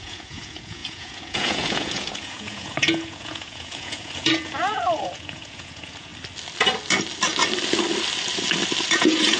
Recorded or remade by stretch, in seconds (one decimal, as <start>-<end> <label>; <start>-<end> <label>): 0.0-6.1 remade; 6.1-8.9 recorded; 8.9-9.4 remade